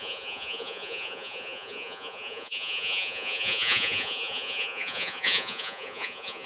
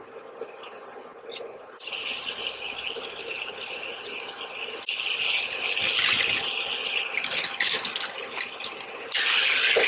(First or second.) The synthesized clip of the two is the first